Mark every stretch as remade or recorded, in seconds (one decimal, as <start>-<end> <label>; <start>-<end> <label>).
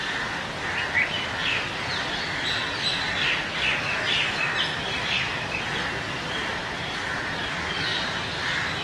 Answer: 0.0-6.5 recorded; 6.5-7.4 remade; 7.4-8.8 recorded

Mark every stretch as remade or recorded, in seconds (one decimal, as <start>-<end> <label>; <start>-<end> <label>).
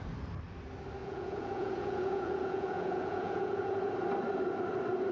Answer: 0.0-1.0 recorded; 1.0-3.9 remade; 3.9-5.1 recorded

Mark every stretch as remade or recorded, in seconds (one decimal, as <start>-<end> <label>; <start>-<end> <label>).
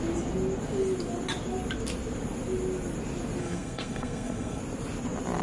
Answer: 0.0-3.4 recorded; 3.4-4.6 remade; 4.6-5.4 recorded